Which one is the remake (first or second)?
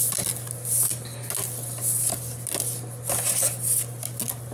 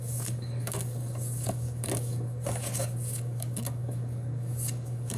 second